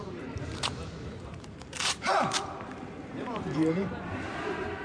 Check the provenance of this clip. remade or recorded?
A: remade